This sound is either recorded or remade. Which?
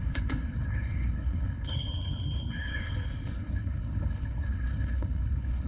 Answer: remade